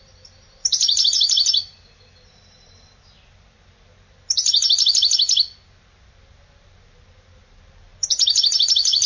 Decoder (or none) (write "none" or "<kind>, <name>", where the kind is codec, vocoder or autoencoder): none